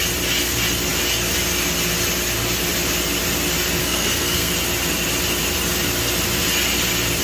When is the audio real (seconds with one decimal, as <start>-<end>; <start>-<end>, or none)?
0.0-3.8; 4.5-7.2